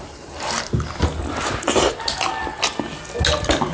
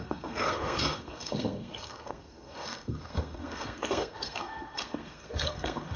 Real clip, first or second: first